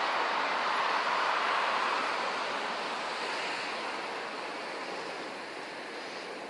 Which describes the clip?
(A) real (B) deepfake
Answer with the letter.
A